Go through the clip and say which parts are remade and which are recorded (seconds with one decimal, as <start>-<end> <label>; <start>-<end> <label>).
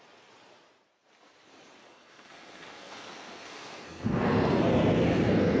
0.0-1.8 recorded; 1.8-5.6 remade